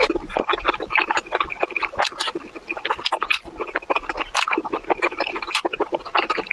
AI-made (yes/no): no